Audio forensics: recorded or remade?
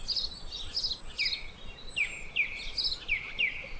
recorded